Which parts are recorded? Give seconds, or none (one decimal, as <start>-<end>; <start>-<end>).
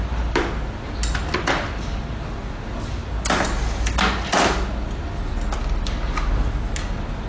0.0-7.3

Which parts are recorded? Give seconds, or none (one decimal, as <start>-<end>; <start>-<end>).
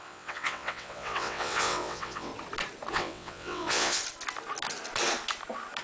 2.3-2.9; 4.0-5.8